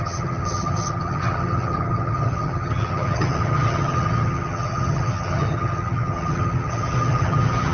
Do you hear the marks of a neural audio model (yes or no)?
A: yes